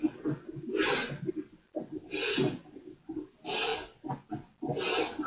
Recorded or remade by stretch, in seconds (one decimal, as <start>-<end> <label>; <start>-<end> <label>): 0.0-5.3 recorded